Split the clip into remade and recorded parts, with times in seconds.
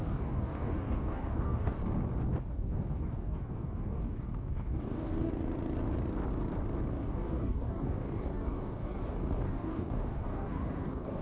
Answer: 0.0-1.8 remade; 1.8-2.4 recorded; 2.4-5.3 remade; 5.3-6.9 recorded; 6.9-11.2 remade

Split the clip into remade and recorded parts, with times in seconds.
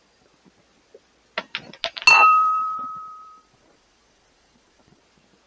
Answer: 0.0-2.1 recorded; 2.1-5.0 remade; 5.0-5.5 recorded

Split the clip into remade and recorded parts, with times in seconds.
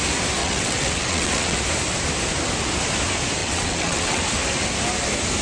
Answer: 0.0-0.4 recorded; 0.4-1.6 remade; 1.6-3.4 recorded; 3.4-4.2 remade; 4.2-5.4 recorded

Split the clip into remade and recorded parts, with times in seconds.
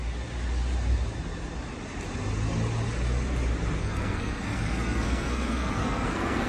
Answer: 0.0-3.8 recorded; 3.8-6.5 remade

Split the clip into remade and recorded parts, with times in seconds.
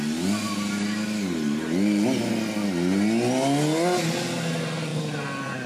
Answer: 0.0-5.7 recorded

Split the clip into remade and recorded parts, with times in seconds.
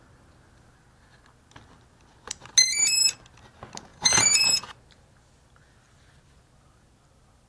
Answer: 0.0-3.9 recorded; 3.9-4.6 remade; 4.6-7.5 recorded